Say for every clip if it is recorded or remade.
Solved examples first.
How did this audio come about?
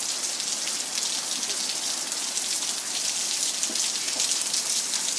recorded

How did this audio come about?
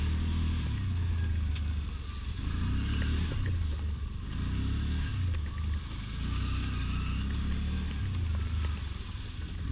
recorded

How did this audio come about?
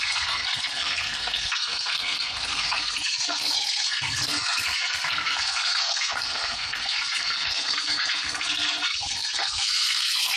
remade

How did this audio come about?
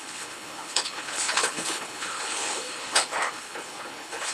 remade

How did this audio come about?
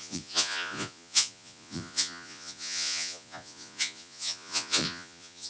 remade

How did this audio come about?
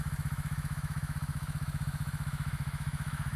remade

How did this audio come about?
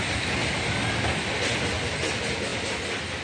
recorded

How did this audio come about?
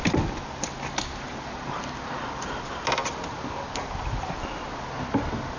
recorded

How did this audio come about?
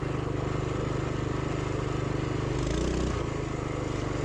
recorded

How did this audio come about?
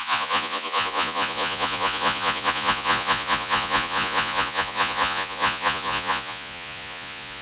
remade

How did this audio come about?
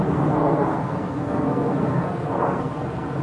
remade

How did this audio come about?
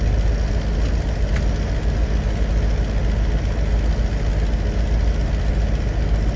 recorded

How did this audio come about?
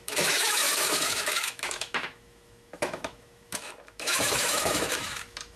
remade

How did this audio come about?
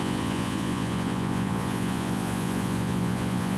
remade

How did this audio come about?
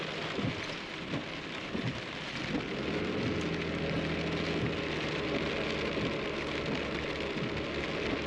recorded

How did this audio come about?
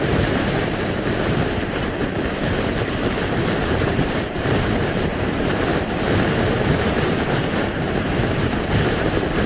remade